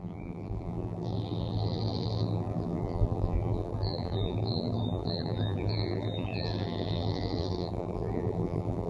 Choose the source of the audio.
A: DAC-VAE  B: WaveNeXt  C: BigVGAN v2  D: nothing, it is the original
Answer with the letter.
C